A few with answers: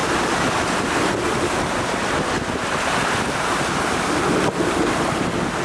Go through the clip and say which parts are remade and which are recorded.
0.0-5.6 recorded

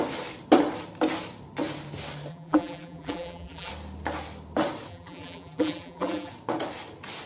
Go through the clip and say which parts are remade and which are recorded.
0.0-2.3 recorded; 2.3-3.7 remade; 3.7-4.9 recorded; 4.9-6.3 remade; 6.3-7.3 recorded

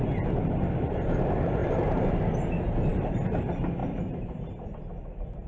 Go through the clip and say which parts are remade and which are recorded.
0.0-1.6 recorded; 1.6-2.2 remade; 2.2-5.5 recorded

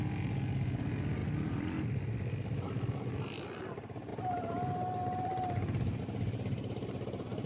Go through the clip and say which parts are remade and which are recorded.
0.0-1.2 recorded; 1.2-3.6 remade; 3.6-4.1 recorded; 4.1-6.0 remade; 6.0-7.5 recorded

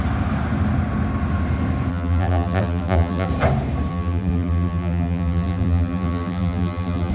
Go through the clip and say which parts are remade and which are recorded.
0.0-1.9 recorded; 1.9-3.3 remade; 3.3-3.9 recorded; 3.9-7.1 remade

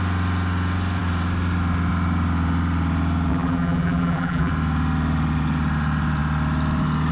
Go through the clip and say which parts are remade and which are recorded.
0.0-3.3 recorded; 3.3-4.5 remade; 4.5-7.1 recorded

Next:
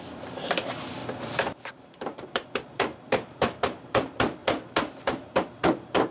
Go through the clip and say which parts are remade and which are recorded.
0.0-1.0 remade; 1.0-1.7 recorded; 1.7-4.4 remade; 4.4-5.0 recorded; 5.0-6.1 remade